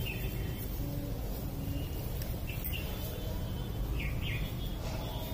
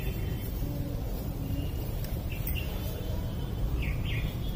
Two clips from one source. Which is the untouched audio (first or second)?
first